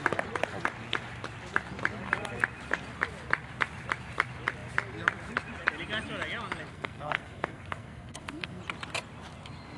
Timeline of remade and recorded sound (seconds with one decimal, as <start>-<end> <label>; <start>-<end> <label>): 0.0-6.7 recorded; 6.7-8.6 remade; 8.6-9.8 recorded